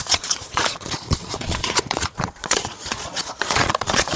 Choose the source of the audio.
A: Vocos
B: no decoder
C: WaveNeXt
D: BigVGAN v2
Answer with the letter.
A